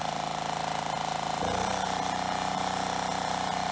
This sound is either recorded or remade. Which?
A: recorded